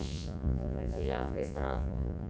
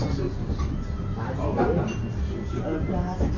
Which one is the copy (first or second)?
first